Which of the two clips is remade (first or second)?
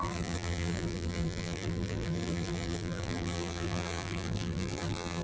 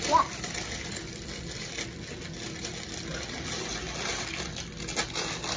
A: first